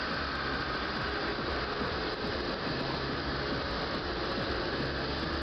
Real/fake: real